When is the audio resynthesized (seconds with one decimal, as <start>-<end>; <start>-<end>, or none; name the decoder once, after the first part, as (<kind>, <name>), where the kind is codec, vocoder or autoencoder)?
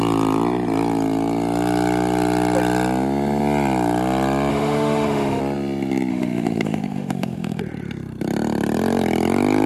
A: 4.5-5.4 (autoencoder, DAC-VAE); 6.1-7.6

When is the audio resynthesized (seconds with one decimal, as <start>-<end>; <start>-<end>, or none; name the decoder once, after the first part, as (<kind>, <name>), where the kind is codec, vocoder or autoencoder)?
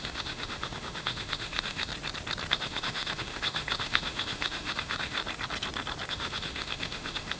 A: 0.0-1.9 (autoencoder, DAC-VAE); 2.5-5.2; 6.1-7.4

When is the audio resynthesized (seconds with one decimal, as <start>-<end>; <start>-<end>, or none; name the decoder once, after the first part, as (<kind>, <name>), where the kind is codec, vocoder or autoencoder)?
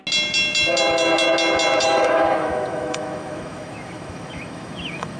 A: 1.8-5.2 (autoencoder, DAC-VAE)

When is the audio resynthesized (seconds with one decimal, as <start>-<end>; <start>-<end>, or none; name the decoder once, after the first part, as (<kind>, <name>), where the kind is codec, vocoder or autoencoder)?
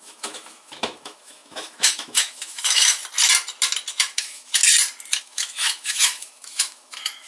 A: 0.0-3.0 (autoencoder, DAC-VAE); 3.9-4.6; 5.2-7.3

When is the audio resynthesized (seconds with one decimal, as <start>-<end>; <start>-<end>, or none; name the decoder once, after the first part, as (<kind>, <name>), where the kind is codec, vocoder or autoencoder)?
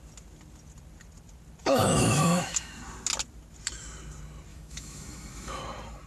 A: 1.6-2.7 (autoencoder, DAC-VAE); 4.5-5.6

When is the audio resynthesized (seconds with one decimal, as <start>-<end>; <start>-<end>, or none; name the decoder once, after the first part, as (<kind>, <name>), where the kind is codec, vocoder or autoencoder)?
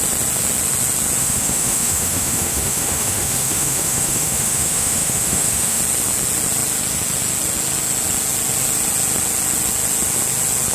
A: 1.2-5.8 (autoencoder, DAC-VAE)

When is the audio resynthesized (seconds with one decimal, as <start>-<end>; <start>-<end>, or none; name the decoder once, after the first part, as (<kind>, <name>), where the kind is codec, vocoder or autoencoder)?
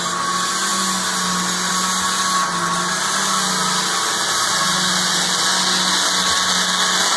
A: none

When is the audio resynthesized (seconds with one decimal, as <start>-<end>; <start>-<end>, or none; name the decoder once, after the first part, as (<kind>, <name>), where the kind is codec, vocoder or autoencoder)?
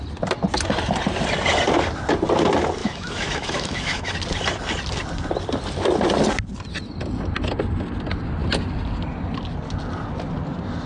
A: 2.8-4.1 (autoencoder, DAC-VAE)